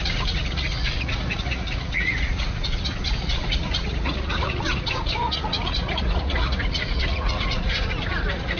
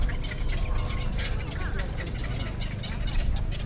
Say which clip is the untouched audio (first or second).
second